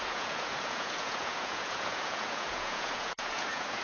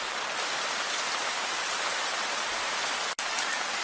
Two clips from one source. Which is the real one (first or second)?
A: second